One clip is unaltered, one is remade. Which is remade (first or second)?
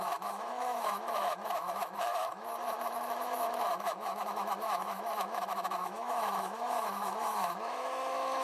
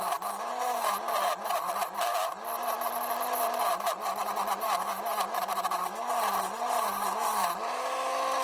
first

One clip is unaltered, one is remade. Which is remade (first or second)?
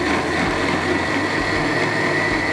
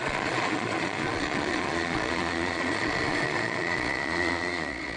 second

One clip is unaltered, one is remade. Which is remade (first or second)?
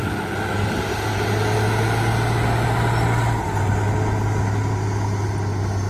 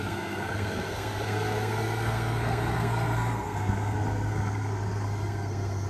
second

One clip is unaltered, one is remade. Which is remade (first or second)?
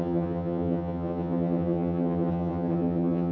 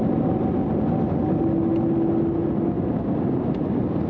first